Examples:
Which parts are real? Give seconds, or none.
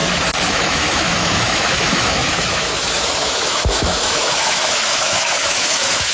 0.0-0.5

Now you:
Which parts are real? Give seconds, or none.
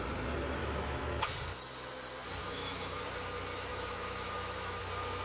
0.0-0.6; 1.3-2.4; 3.0-3.7; 4.8-5.2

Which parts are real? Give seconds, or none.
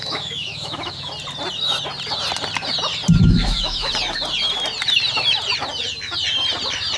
1.1-3.2; 3.9-7.0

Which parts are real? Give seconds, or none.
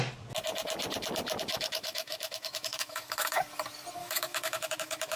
0.0-1.5; 3.4-4.0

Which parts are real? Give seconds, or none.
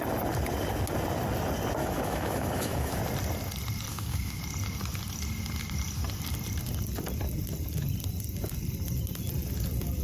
0.0-1.8; 3.0-3.9; 4.4-10.0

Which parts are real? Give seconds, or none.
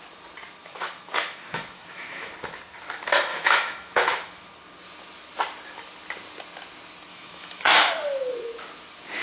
0.0-0.6; 2.3-3.3; 4.5-7.1; 7.9-9.2